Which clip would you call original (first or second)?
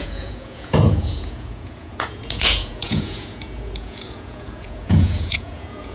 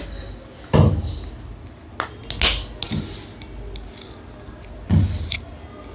second